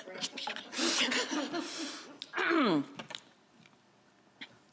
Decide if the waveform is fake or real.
real